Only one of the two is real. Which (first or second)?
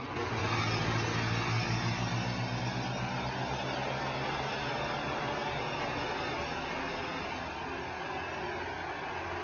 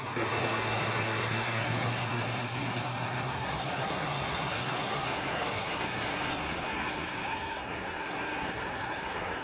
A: first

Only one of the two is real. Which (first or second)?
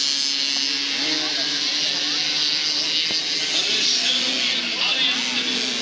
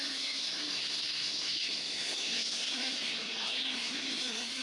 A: first